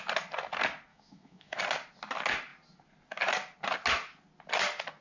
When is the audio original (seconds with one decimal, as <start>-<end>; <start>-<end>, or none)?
0.0-0.9; 1.6-5.0

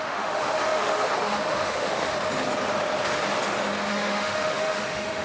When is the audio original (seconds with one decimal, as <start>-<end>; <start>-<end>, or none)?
2.1-3.9

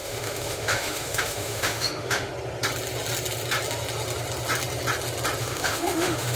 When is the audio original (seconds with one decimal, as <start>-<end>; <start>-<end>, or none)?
2.3-5.4

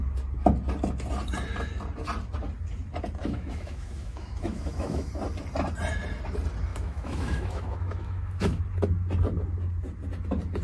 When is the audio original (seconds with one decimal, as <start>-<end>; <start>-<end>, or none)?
0.0-3.2; 5.1-6.7; 8.6-10.6

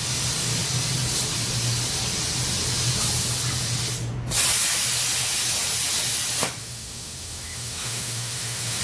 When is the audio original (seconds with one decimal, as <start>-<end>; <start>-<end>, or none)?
0.0-6.6

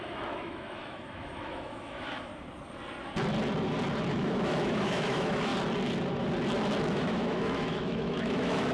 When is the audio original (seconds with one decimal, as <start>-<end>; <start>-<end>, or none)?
2.3-4.1; 5.5-6.8

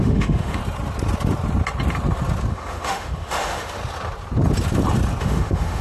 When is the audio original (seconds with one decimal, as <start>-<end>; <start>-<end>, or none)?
0.6-2.5; 3.8-5.2